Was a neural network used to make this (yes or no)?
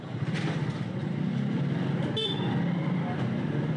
no